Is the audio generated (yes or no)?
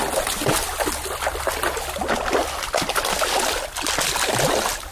no